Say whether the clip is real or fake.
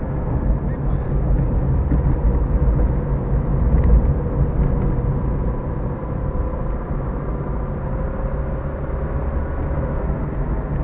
real